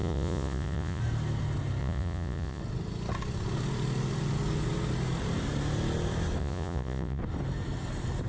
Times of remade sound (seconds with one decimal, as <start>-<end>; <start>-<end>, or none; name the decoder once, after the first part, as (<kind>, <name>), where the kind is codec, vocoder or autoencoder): 0.0-1.0 (vocoder, Vocos); 1.8-2.6; 6.4-7.2